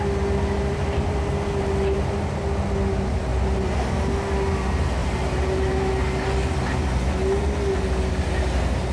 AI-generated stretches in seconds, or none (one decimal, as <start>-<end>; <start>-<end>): 5.0-5.9